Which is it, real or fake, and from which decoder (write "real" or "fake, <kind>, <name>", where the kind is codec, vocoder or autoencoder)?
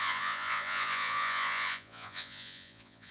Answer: fake, vocoder, Vocos